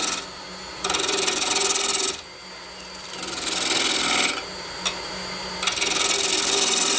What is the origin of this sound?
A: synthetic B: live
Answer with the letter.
B